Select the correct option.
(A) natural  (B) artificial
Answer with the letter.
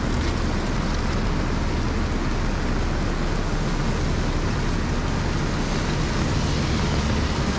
A